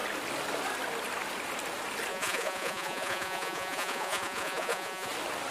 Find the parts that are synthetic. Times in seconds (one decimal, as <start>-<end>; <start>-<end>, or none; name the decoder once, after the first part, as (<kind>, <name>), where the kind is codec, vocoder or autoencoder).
2.1-5.1 (vocoder, Vocos)